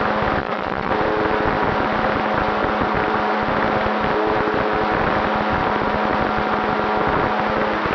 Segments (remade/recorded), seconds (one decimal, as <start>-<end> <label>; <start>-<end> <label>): 0.0-0.4 recorded; 0.4-0.9 remade; 0.9-7.9 recorded